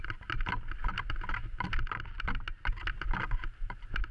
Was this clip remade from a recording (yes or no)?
no